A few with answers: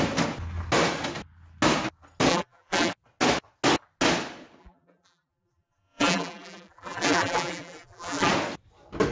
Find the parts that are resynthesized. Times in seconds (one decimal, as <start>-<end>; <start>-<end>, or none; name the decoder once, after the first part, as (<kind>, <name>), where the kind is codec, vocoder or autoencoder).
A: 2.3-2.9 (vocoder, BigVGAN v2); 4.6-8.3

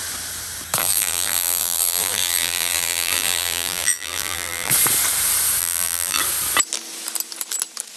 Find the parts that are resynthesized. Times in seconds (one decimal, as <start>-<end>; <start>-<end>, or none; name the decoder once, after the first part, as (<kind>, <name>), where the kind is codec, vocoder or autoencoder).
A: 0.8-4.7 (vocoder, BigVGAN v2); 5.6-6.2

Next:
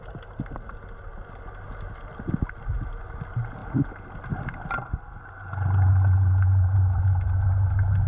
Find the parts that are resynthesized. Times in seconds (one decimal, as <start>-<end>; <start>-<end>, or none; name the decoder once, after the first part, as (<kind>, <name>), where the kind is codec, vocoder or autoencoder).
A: none